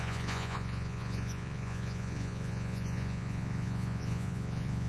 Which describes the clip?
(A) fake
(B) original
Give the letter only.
A